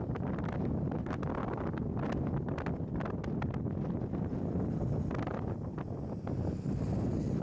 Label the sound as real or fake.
real